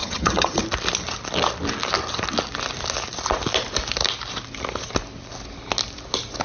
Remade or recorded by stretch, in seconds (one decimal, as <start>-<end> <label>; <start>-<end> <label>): 0.0-0.6 remade; 0.6-6.4 recorded